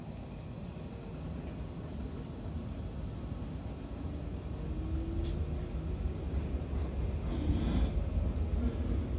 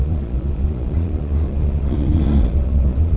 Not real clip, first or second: second